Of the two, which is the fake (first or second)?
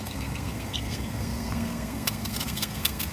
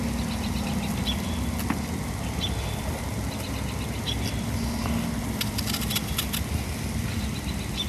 first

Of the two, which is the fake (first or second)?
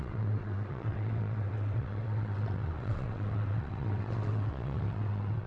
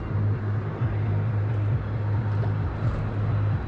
first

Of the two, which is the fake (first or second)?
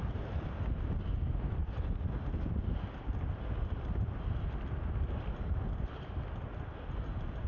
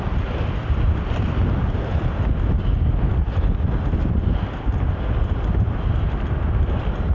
first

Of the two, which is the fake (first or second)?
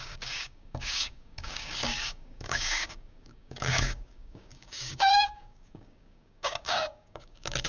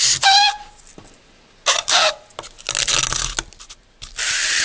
first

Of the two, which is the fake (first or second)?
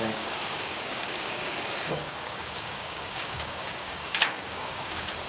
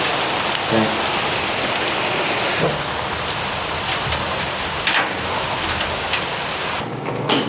first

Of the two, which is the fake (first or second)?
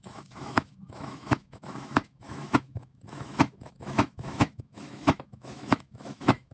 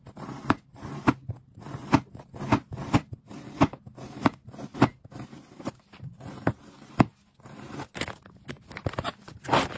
first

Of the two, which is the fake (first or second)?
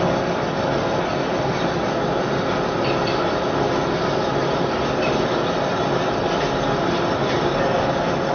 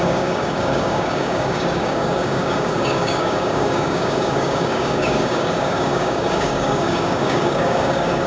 second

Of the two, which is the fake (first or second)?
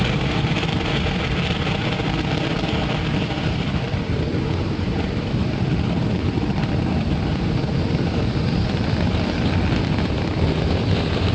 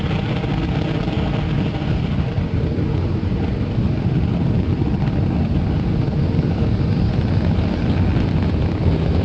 first